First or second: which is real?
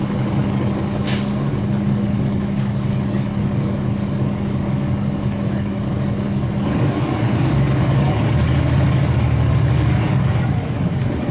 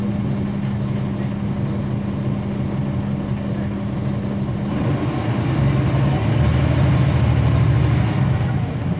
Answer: second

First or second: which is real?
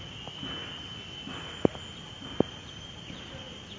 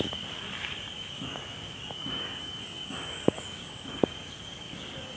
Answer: first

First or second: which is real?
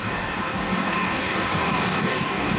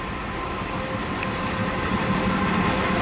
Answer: second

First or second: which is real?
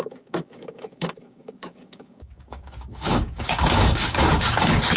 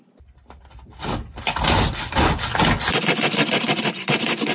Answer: second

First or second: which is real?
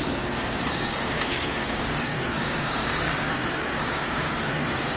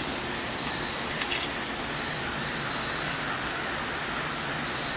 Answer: second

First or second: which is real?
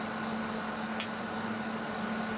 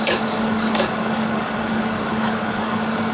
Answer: first